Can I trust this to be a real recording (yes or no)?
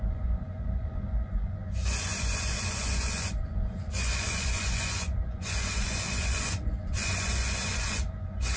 no